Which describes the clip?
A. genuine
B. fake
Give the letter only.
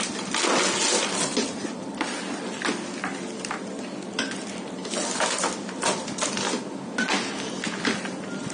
A